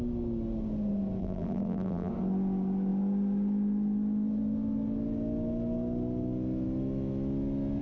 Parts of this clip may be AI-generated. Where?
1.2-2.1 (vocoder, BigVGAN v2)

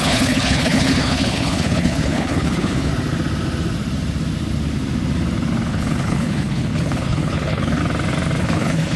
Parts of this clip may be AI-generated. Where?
0.0-2.9 (codec, HILCodec); 5.7-7.8; 8.4-9.0

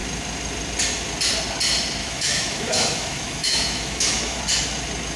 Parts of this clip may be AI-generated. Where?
2.0-4.4 (autoencoder, DAC-VAE)

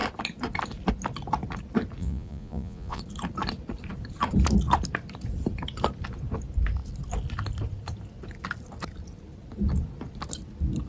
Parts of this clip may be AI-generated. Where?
2.0-3.0 (vocoder, Vocos)

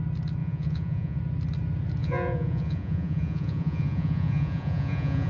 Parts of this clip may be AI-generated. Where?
0.4-1.2 (vocoder, Vocos); 2.0-5.3

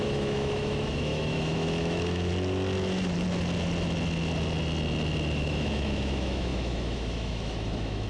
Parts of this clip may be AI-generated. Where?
0.0-2.3 (autoencoder, DAC-VAE); 5.4-8.1

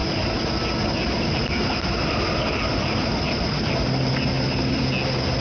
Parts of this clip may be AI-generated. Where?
3.1-4.9 (vocoder, BigVGAN v2)